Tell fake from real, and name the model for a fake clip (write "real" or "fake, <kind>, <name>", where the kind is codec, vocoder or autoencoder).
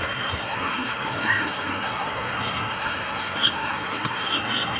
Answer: fake, codec, SNAC